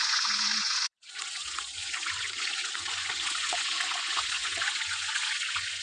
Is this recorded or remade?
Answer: remade